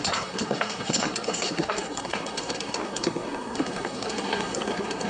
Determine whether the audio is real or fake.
fake